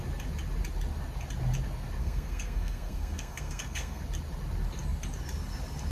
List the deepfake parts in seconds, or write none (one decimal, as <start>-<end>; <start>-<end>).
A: 2.0-4.0